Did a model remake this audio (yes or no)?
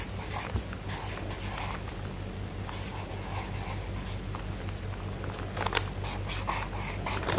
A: no